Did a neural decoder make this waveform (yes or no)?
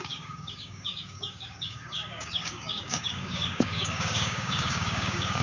yes